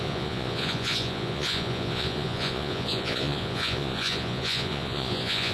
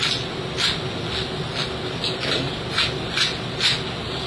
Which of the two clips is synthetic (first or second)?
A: first